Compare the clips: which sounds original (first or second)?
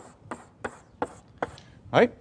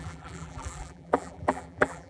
first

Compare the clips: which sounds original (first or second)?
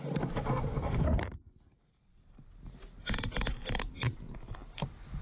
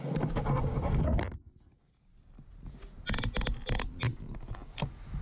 second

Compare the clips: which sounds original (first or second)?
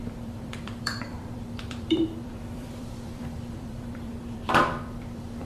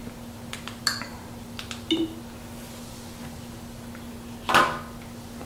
second